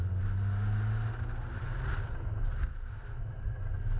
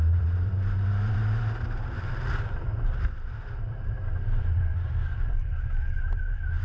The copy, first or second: second